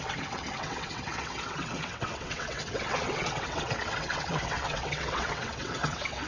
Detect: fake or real fake